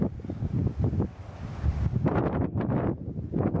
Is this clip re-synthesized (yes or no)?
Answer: no